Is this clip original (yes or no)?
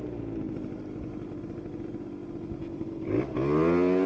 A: yes